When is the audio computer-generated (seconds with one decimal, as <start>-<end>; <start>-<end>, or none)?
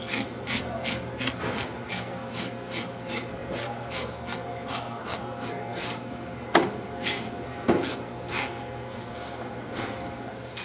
0.0-10.6